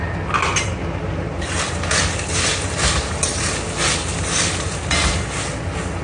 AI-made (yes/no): no